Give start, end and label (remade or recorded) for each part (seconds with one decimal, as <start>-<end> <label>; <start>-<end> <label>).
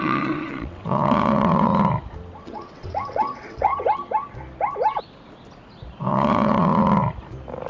0.0-1.7 remade; 1.7-2.4 recorded; 2.4-3.7 remade; 3.7-6.1 recorded; 6.1-6.7 remade; 6.7-7.7 recorded